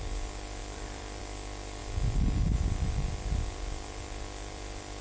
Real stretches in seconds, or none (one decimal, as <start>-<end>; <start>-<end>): none